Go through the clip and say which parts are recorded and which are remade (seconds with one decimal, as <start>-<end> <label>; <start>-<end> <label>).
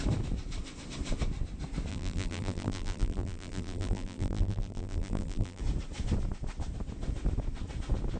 0.0-1.9 recorded; 1.9-5.6 remade; 5.6-8.2 recorded